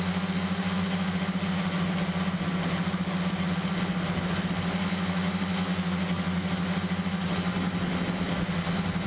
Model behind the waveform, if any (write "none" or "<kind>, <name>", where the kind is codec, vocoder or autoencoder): none